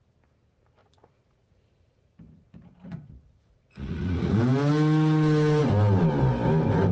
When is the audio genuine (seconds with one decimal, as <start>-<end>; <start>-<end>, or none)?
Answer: 0.0-0.8; 4.4-6.9